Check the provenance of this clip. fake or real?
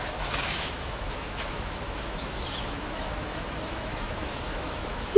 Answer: fake